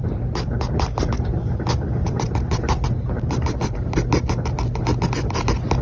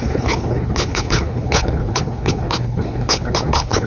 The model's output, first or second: second